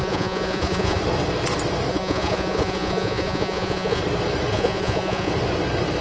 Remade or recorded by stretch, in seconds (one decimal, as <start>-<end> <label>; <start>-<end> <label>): 0.0-1.0 remade; 1.0-1.9 recorded; 1.9-4.0 remade; 4.0-4.5 recorded; 4.5-5.3 remade; 5.3-6.0 recorded

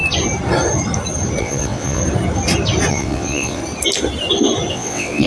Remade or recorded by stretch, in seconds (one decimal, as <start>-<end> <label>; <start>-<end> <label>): 0.0-1.4 recorded; 1.4-2.0 remade; 2.0-2.9 recorded; 2.9-3.6 remade; 3.6-4.7 recorded; 4.7-5.3 remade

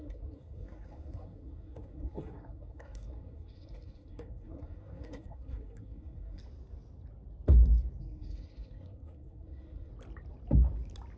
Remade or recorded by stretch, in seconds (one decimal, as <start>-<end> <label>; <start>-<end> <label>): 0.0-6.4 remade; 6.4-8.0 recorded; 8.0-9.9 remade; 9.9-11.2 recorded